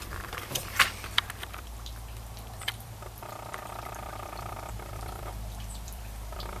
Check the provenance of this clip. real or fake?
fake